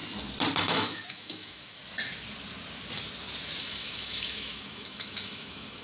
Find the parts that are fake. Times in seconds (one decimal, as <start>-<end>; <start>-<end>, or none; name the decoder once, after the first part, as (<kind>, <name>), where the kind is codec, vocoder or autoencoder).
0.6-1.8 (autoencoder, DAC-VAE); 3.6-5.8